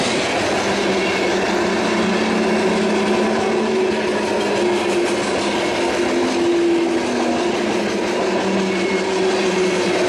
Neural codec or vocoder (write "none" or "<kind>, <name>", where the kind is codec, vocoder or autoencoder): none